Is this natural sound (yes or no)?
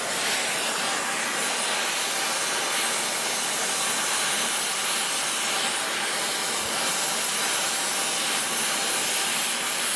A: yes